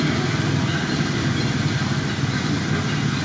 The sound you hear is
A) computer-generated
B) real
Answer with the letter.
B